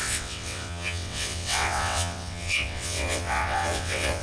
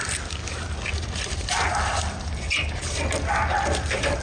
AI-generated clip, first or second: first